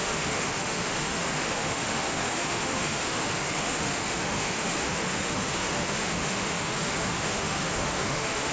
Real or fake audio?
fake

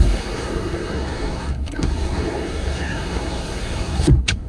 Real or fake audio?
fake